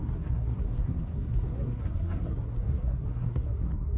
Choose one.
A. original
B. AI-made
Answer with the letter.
B